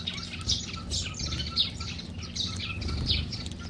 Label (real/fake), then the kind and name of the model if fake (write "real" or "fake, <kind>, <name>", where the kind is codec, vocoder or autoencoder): real